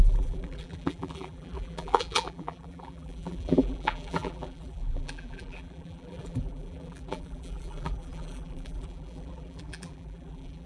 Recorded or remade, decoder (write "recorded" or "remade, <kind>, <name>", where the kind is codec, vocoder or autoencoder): remade, vocoder, BigVGAN v2